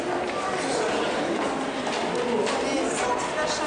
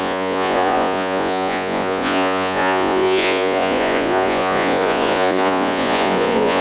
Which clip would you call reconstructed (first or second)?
second